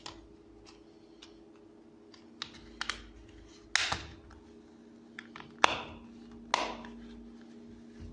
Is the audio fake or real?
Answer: real